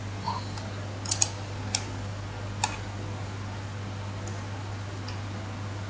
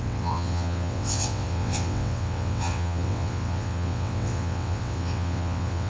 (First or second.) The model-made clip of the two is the second